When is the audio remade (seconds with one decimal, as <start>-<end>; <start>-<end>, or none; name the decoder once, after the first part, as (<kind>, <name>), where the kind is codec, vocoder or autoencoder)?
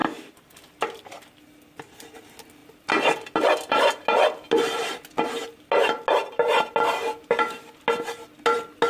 none